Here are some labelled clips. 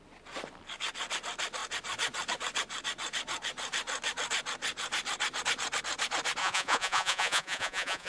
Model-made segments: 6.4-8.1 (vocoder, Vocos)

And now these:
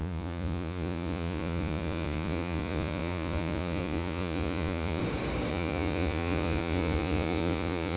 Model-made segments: 0.0-5.0 (vocoder, Vocos); 5.5-8.0